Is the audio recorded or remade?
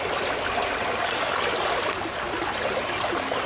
recorded